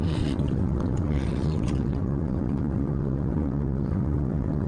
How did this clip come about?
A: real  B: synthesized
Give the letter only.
B